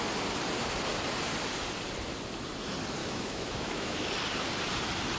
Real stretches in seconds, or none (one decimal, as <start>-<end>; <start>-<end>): 0.0-3.0; 4.1-5.2